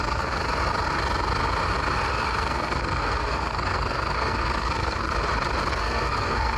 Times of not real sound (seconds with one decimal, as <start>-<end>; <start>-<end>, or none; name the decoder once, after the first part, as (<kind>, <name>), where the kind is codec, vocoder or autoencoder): 0.0-0.4 (codec, SNAC); 2.1-5.1; 5.7-6.6